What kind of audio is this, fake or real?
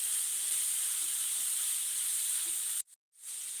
fake